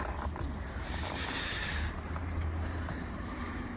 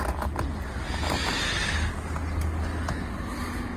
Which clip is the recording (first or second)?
second